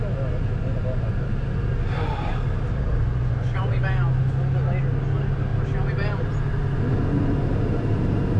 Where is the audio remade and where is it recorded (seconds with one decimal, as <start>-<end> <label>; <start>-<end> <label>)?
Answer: 0.0-8.4 recorded